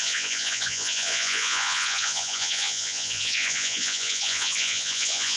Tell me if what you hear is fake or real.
fake